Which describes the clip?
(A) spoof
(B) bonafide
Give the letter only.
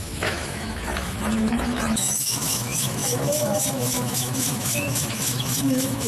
A